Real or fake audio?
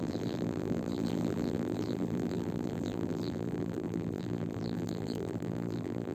fake